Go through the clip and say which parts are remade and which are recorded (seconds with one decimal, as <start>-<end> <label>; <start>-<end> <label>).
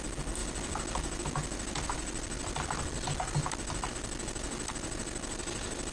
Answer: 0.0-5.9 recorded